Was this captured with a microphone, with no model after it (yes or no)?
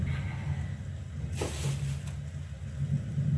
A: yes